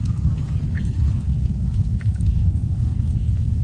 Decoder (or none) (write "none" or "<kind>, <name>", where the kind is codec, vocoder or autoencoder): codec, SNAC